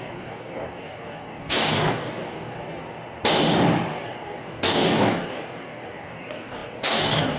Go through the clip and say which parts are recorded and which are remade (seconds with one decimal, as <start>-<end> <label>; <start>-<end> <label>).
0.0-2.8 remade; 2.8-3.9 recorded; 3.9-7.4 remade

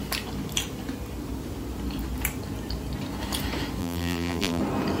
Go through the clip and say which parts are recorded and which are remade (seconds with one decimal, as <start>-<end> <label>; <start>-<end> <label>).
0.0-3.8 recorded; 3.8-4.6 remade; 4.6-5.0 recorded

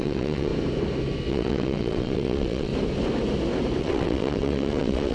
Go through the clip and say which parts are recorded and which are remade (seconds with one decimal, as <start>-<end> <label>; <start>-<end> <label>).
0.0-0.5 remade; 0.5-1.3 recorded; 1.3-2.7 remade; 2.7-3.8 recorded; 3.8-5.1 remade

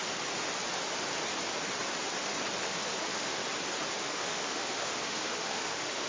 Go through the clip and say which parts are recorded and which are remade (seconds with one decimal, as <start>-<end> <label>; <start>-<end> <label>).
0.0-2.6 recorded; 2.6-3.4 remade; 3.4-4.0 recorded; 4.0-6.1 remade

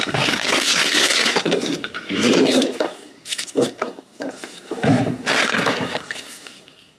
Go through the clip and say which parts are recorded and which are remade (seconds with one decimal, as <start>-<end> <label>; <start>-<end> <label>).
0.0-7.0 remade